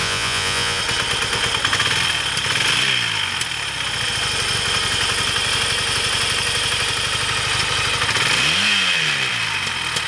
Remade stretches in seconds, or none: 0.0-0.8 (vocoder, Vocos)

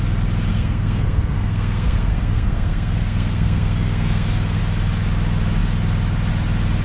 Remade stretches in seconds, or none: 0.5-4.6 (codec, SNAC)

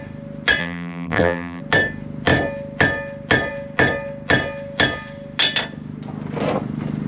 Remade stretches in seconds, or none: 0.6-1.6 (vocoder, BigVGAN v2)

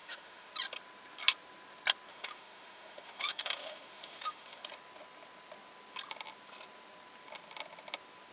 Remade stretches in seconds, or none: 0.0-0.5 (autoencoder, DAC-VAE); 2.1-4.6

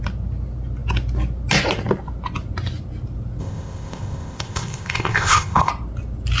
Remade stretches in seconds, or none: 3.4-5.7 (codec, ZipCodec)

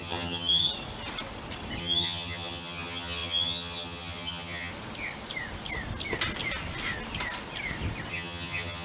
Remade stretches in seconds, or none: 0.0-0.7 (vocoder, HiFi-GAN); 1.8-4.7; 8.1-8.8